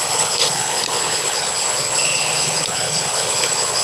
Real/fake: fake